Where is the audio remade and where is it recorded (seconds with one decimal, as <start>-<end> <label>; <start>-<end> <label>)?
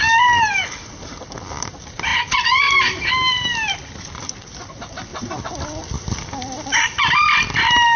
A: 0.0-2.1 recorded; 2.1-3.0 remade; 3.0-8.0 recorded